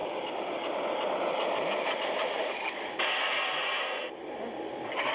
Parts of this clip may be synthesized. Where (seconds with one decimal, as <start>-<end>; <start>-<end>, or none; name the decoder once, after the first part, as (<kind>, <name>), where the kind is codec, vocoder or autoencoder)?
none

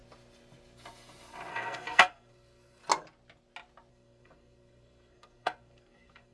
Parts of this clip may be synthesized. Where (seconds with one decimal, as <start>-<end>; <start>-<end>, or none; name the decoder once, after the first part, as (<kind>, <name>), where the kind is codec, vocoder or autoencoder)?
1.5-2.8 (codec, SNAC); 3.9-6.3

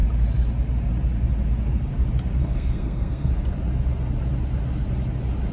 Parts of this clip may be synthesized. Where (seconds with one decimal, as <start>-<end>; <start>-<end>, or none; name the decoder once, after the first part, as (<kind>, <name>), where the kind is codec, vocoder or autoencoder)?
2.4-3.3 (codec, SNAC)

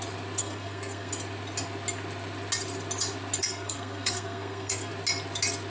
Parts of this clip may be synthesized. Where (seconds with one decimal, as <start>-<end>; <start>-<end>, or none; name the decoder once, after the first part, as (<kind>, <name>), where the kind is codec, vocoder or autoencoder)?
0.4-1.1 (codec, SNAC); 3.4-4.9

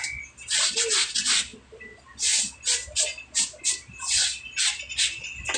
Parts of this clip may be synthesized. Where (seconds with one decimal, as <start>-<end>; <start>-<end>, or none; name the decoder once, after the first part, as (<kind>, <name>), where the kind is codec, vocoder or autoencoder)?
none

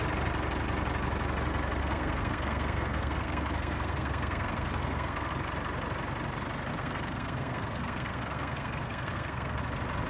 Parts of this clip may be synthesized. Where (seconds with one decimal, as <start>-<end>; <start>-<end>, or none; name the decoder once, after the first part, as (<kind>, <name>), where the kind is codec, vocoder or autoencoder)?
1.8-5.3 (codec, SNAC); 6.7-9.6